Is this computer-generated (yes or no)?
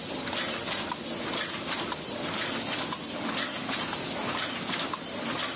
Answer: no